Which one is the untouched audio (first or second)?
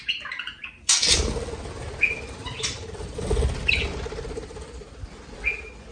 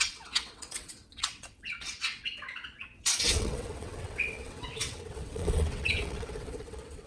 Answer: first